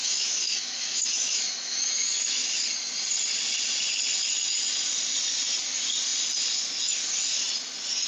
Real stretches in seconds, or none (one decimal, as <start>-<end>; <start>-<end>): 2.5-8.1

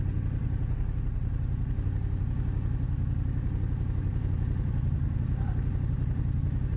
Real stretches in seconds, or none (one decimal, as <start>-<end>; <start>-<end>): 0.0-4.1; 5.7-6.8

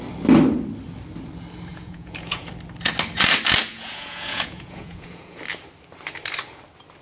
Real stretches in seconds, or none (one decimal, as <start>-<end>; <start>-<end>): 0.0-1.7; 2.5-3.7; 5.4-7.0

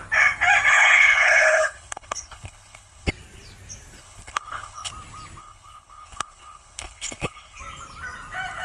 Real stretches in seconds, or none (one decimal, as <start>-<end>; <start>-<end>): 0.0-0.7; 3.1-4.0; 4.9-5.4; 7.6-8.6

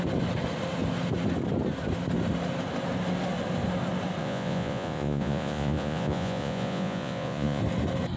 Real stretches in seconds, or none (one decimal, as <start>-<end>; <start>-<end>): 0.0-4.2; 7.6-8.2

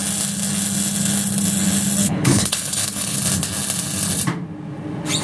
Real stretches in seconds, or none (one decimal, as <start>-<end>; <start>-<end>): 0.0-2.0; 3.2-5.2

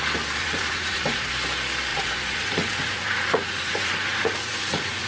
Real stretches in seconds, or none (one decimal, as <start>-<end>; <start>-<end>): 0.0-0.4; 1.3-1.9